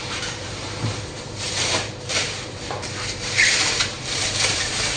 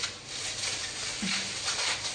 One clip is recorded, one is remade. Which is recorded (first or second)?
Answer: second